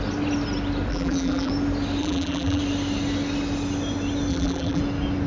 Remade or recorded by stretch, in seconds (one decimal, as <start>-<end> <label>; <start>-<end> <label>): 0.0-0.9 recorded; 0.9-1.5 remade; 1.5-2.0 recorded; 2.0-2.6 remade; 2.6-4.3 recorded; 4.3-4.8 remade; 4.8-5.3 recorded